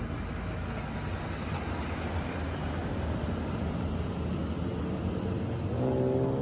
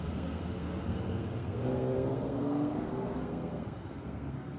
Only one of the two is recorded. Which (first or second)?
first